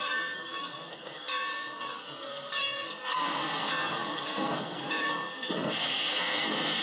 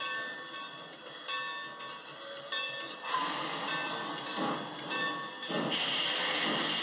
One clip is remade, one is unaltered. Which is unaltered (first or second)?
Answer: second